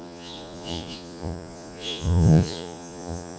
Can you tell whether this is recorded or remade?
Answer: remade